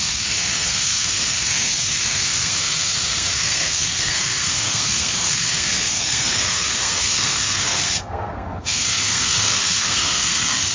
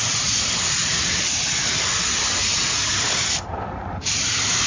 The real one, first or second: second